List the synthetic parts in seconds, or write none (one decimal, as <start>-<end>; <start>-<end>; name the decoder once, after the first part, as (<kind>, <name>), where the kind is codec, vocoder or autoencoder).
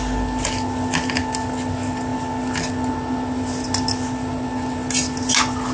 none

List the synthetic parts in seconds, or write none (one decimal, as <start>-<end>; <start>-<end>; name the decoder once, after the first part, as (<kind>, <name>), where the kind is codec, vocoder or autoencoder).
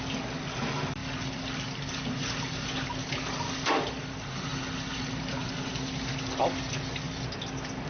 none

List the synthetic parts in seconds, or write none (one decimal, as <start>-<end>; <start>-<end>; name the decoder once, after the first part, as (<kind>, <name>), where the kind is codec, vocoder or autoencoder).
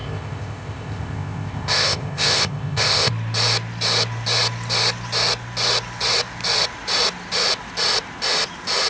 0.0-3.1 (codec, ZipCodec)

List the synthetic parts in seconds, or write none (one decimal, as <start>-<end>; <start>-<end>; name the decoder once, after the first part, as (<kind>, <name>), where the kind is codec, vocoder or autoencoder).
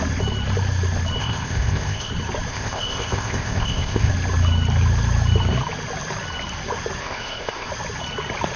1.2-2.1 (codec, ZipCodec); 2.5-4.1; 7.0-7.7